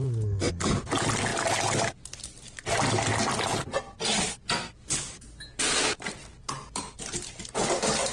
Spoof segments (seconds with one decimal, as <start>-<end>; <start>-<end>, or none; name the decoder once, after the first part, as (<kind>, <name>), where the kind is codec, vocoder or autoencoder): none